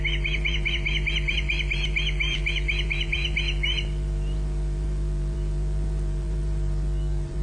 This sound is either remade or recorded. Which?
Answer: remade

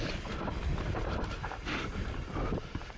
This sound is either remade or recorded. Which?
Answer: recorded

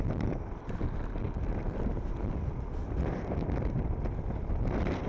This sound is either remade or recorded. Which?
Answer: remade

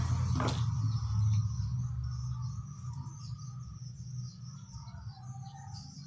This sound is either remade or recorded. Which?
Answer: recorded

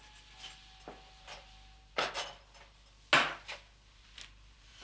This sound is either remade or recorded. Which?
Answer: recorded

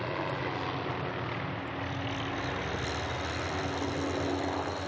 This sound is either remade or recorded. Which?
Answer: recorded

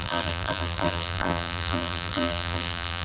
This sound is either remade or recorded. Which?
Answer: remade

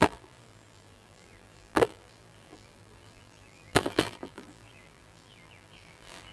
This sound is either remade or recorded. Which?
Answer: remade